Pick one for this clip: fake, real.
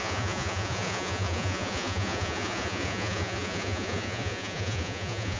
fake